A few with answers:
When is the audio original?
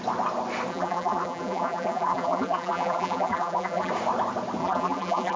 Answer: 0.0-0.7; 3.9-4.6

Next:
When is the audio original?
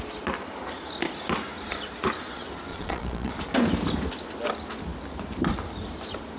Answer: 0.0-2.7; 3.3-6.4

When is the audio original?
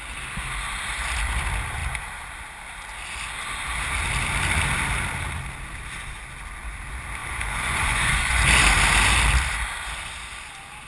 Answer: 0.0-7.2; 8.4-10.9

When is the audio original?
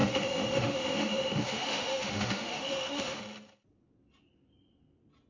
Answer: 3.2-5.3